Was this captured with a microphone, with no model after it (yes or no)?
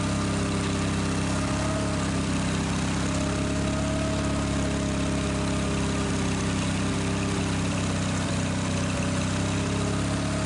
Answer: yes